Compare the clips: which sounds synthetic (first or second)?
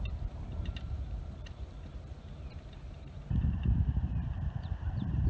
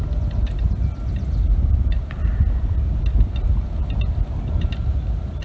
first